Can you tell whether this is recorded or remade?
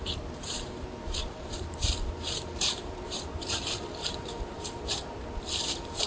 remade